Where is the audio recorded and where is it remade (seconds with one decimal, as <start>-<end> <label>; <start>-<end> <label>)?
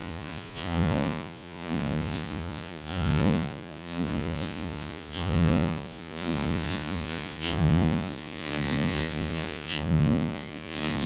0.0-11.1 remade